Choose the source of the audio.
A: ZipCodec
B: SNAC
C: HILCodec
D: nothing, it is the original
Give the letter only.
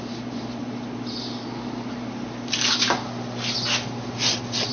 D